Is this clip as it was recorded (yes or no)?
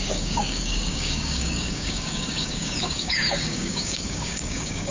no